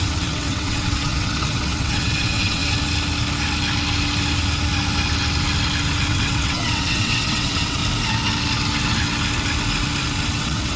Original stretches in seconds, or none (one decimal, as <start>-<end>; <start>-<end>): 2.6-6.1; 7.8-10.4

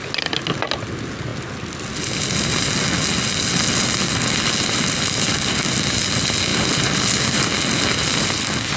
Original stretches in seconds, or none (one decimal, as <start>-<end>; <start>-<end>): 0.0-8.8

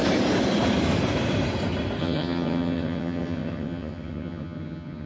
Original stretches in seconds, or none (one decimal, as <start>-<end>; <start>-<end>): 0.0-2.0

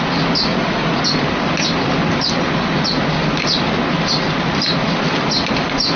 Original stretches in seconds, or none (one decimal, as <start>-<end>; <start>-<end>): 0.0-0.5; 1.0-6.0